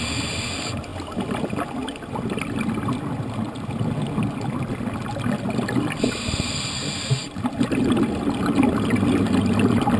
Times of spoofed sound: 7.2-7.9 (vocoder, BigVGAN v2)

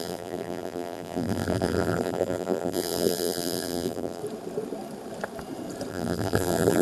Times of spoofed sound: 0.0-4.2 (vocoder, BigVGAN v2); 5.9-6.8

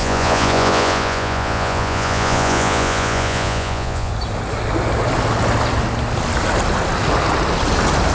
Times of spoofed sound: 0.0-4.1 (vocoder, Vocos)

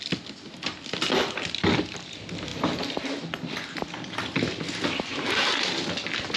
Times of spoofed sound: none